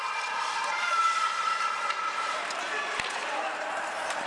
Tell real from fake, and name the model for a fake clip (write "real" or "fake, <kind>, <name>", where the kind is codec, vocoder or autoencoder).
fake, vocoder, BigVGAN v2